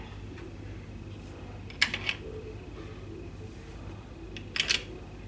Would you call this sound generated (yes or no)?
no